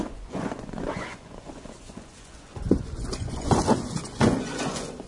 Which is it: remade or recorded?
remade